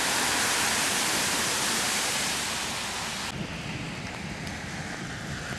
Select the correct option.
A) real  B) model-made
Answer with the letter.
A